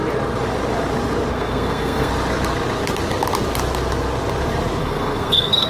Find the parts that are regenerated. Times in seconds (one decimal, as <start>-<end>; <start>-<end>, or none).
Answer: 1.3-2.1; 4.8-5.7